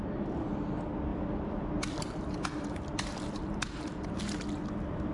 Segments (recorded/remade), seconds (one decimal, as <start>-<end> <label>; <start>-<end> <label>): 0.0-1.1 recorded; 1.1-4.2 remade; 4.2-5.1 recorded